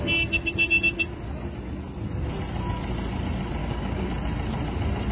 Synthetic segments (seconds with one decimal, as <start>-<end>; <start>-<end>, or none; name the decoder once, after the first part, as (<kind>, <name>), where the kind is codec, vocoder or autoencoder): 3.6-4.1 (codec, DAC)